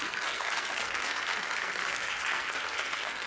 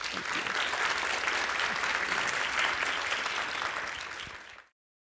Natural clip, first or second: second